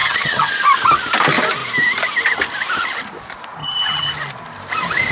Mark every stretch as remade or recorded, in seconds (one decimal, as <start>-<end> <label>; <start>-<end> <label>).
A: 0.0-0.5 remade; 0.5-3.6 recorded; 3.6-4.1 remade; 4.1-5.1 recorded